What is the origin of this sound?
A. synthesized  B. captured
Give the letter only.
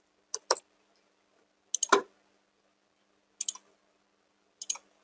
B